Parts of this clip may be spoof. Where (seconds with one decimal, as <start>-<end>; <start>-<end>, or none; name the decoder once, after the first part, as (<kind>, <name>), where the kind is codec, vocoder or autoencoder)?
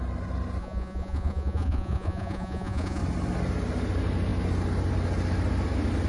0.6-3.0 (vocoder, Vocos)